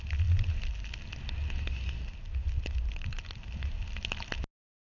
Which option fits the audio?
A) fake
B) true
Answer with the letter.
B